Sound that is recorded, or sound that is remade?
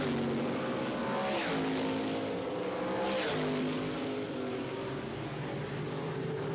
recorded